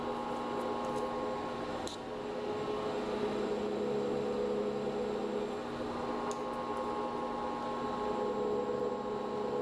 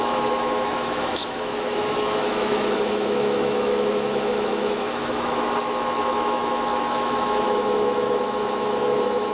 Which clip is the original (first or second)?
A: first